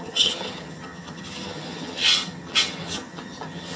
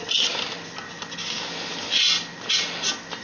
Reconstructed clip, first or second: first